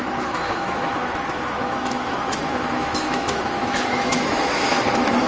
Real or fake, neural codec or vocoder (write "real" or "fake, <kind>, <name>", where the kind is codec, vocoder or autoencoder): fake, autoencoder, DAC-VAE